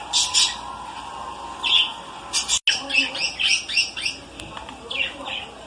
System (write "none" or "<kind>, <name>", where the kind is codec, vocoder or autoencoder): none